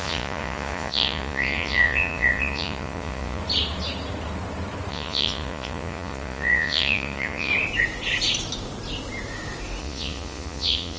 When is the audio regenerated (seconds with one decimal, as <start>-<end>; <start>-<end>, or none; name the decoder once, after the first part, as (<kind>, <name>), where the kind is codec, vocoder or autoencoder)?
0.0-3.4 (vocoder, Vocos); 4.9-7.5; 9.8-11.0